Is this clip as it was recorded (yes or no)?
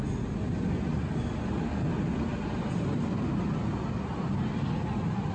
yes